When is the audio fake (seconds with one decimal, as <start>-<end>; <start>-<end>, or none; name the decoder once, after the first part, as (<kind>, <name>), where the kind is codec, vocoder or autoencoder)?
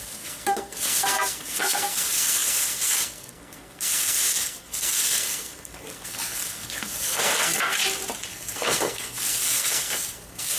0.0-7.8 (codec, SNAC); 8.3-10.6